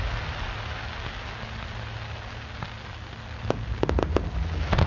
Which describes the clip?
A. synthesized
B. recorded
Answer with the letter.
B